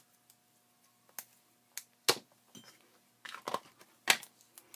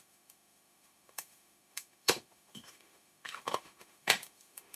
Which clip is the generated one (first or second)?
second